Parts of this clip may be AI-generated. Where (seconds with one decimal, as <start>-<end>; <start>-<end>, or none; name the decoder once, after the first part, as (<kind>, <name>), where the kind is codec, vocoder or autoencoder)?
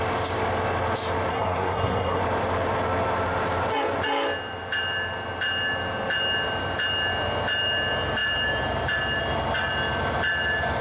1.3-2.2 (codec, SNAC)